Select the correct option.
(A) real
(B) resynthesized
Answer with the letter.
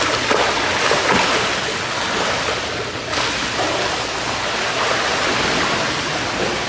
A